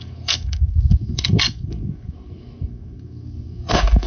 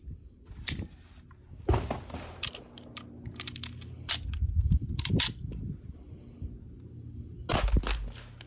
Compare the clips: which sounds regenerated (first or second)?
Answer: first